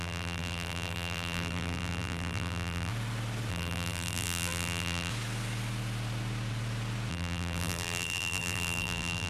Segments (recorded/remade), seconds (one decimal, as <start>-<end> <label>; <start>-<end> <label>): 0.0-2.9 remade; 2.9-3.5 recorded; 3.5-5.1 remade; 5.1-7.1 recorded; 7.1-9.3 remade